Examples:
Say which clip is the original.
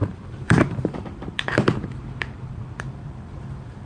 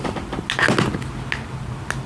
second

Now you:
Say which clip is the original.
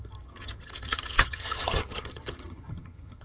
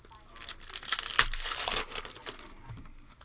second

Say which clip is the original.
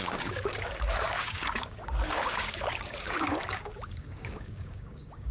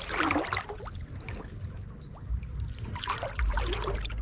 second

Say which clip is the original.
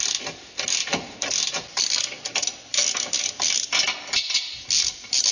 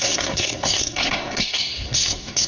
first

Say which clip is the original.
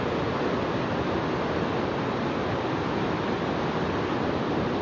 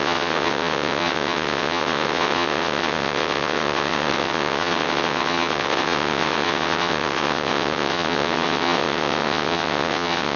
first